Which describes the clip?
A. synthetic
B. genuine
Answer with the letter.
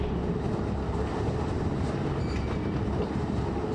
B